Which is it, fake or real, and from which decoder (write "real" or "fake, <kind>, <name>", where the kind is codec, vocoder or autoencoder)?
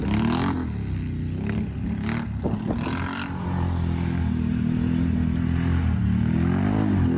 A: real